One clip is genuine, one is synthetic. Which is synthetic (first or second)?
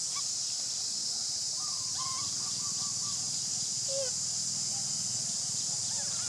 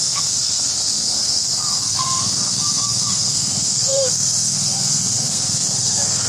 second